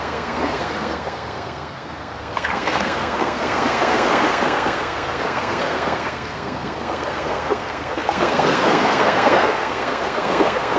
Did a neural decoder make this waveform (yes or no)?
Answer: yes